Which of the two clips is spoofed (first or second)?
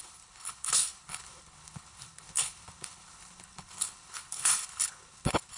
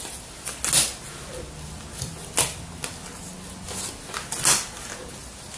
first